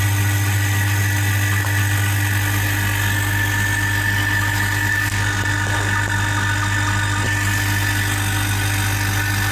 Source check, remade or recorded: recorded